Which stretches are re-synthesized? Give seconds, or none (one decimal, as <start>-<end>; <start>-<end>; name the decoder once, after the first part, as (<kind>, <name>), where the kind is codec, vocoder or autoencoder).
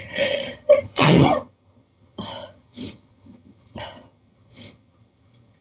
0.0-5.6 (vocoder, HiFi-GAN)